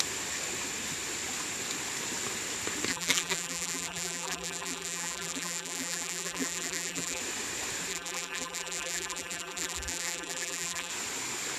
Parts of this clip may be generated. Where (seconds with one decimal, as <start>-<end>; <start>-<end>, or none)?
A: 2.9-7.2; 7.9-10.9